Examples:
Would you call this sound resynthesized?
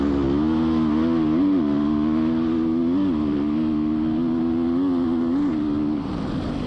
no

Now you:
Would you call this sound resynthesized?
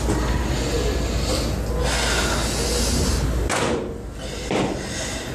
no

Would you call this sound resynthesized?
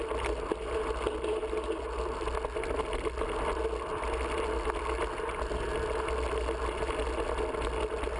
no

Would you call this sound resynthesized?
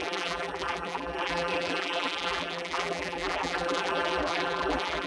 yes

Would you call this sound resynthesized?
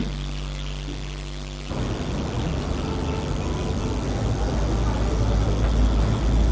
no